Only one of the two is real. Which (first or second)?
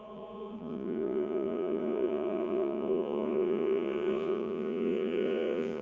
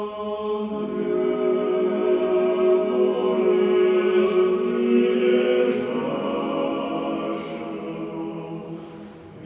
second